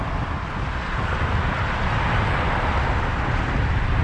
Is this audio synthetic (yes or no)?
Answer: no